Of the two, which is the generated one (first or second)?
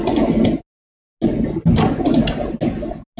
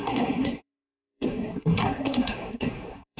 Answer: second